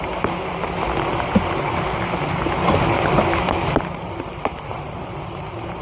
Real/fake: real